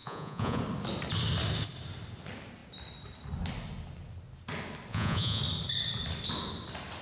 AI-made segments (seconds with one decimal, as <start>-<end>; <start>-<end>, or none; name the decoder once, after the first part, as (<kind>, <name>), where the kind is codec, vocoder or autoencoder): 0.0-0.6 (vocoder, Vocos); 4.9-5.4